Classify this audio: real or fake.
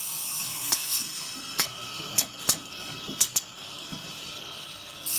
fake